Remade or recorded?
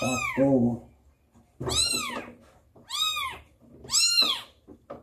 recorded